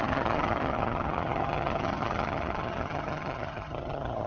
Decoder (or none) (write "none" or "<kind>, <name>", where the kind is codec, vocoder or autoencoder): vocoder, HiFi-GAN